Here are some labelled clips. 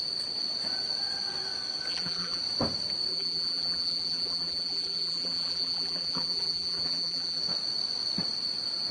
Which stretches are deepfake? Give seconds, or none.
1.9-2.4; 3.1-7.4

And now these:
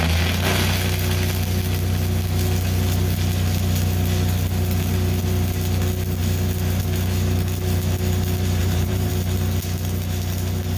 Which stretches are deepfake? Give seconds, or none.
8.6-9.1

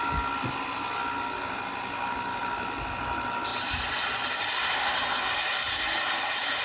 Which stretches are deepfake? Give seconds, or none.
3.5-4.5; 5.5-6.6

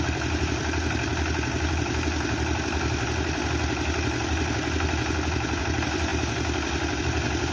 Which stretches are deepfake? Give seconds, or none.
0.0-1.1; 5.6-6.1; 7.0-7.5

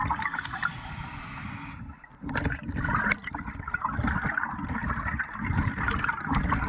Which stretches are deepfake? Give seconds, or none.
0.0-1.2; 2.1-3.4

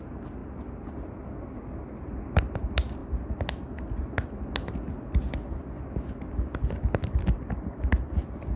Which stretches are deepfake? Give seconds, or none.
7.0-8.0

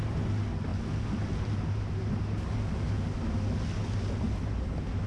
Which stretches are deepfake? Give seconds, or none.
none

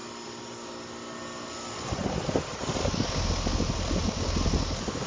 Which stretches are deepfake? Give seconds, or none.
3.5-4.6